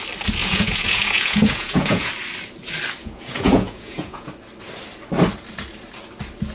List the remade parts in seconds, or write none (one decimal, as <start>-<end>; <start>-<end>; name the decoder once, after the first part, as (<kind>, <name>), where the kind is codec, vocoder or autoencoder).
0.4-2.1 (vocoder, Vocos); 3.0-4.3